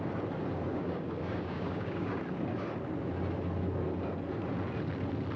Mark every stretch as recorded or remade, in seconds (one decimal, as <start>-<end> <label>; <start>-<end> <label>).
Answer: 0.0-0.7 recorded; 0.7-2.2 remade; 2.2-5.4 recorded